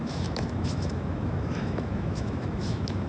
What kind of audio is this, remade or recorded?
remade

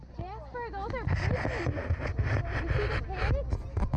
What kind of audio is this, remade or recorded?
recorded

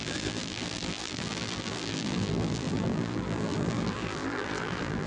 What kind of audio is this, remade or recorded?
remade